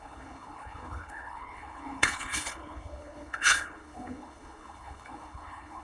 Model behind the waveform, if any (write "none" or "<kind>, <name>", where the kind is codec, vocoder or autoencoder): codec, HILCodec